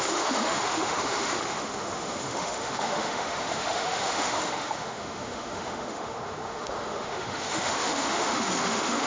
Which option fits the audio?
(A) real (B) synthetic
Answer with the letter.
B